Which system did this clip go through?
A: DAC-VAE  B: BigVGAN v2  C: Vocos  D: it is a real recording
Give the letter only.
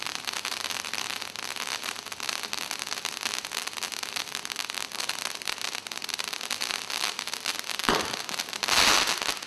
B